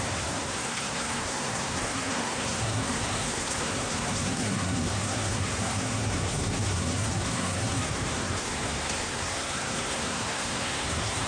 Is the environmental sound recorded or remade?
remade